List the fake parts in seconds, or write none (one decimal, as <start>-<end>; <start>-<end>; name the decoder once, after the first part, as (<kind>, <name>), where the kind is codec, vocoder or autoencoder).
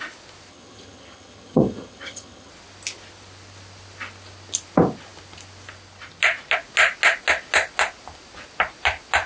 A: 0.5-2.5 (vocoder, HiFi-GAN)